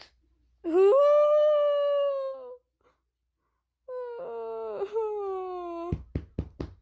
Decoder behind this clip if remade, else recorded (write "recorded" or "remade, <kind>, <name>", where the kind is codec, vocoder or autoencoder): recorded